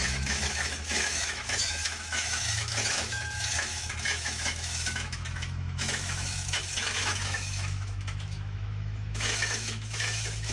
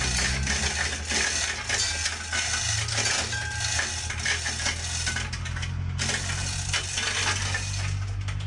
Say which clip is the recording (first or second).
second